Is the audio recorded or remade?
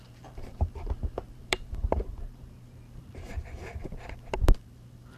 remade